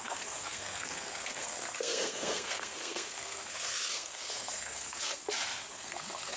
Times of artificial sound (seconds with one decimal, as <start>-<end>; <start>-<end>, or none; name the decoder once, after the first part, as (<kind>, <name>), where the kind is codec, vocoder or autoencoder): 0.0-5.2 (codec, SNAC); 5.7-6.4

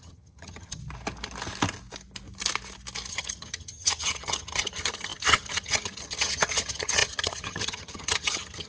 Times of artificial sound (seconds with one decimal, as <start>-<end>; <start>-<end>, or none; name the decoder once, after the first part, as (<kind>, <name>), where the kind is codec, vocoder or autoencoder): 0.0-0.8 (vocoder, HiFi-GAN); 3.1-8.7

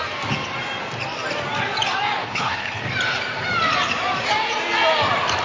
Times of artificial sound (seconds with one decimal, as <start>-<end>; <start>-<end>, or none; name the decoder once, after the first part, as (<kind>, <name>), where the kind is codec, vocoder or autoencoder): 2.2-2.8 (codec, HILCodec)